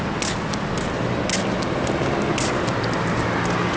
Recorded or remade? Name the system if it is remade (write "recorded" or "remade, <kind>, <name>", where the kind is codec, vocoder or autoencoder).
recorded